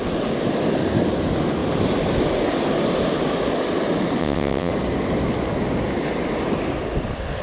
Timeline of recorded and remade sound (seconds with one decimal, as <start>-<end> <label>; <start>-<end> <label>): 0.0-4.2 recorded; 4.2-4.7 remade; 4.7-7.4 recorded